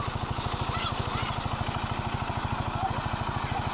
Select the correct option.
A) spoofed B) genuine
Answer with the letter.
B